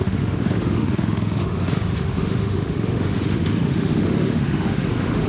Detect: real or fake fake